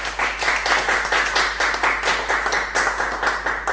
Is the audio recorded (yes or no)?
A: yes